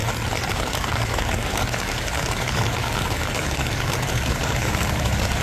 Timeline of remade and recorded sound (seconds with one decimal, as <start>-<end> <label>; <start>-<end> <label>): 0.0-0.5 recorded; 0.5-5.4 remade